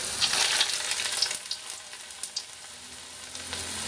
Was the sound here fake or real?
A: real